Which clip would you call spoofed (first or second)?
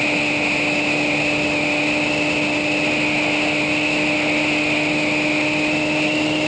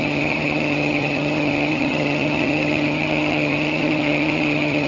second